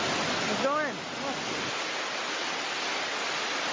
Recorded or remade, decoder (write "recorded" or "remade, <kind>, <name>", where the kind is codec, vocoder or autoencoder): recorded